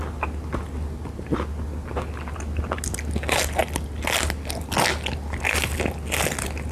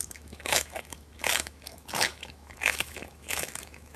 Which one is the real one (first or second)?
first